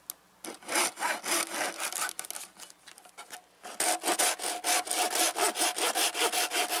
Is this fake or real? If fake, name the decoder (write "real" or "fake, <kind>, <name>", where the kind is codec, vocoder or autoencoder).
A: real